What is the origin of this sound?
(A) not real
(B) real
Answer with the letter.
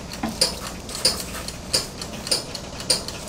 B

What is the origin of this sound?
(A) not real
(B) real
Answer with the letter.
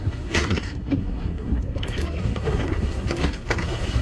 A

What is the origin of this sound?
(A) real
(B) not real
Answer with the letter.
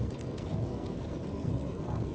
B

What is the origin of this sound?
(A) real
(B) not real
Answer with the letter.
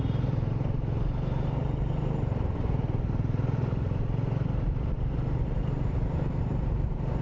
B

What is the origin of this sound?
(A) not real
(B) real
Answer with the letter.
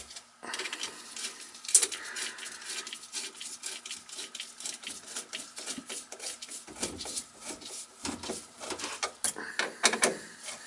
B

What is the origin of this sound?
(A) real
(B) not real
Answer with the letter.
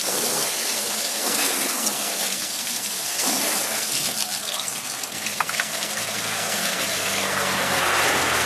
B